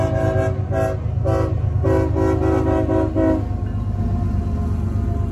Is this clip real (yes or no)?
yes